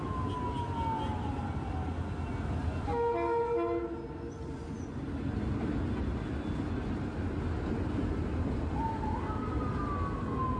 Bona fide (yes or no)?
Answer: yes